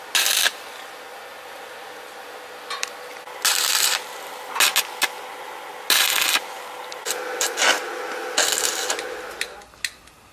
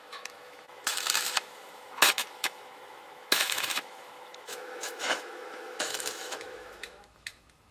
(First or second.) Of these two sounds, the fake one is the second